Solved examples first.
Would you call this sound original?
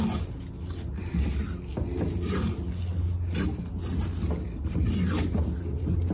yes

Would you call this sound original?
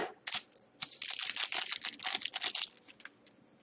yes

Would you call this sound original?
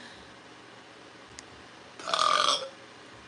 yes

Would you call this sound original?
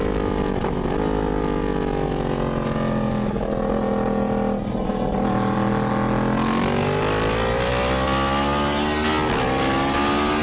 yes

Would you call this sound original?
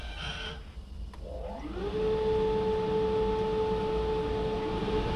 yes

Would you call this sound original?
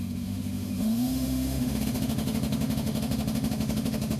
no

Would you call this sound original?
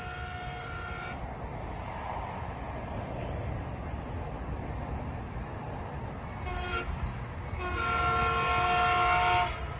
yes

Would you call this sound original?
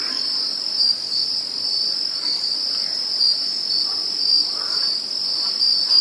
yes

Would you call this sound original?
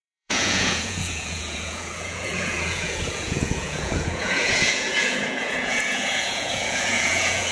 no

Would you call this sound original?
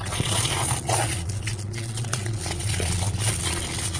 no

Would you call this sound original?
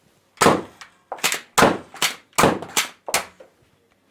yes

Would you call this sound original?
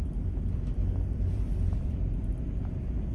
no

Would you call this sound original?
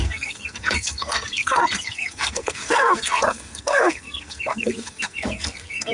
no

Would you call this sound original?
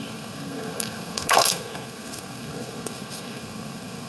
no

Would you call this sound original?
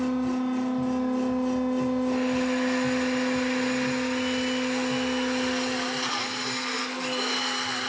yes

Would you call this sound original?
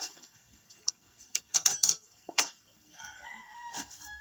no